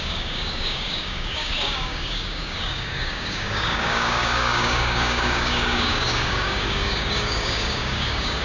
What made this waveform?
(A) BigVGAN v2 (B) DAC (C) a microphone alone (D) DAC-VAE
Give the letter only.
B